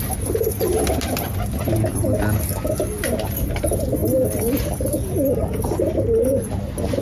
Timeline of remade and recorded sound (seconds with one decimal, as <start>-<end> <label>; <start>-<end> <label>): 0.0-7.0 recorded